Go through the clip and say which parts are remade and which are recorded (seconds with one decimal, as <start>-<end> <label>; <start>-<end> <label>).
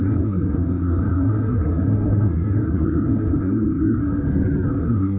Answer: 0.0-4.0 remade; 4.0-4.8 recorded; 4.8-5.2 remade